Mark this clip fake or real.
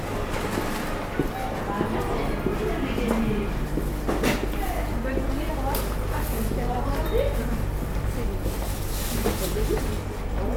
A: real